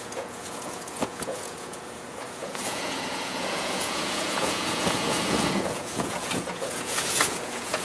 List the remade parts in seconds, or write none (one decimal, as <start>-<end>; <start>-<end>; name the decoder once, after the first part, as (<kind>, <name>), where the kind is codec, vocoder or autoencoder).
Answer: 0.0-7.8 (vocoder, Vocos)